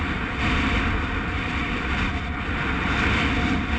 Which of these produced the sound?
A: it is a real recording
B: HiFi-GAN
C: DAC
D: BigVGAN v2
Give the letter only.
D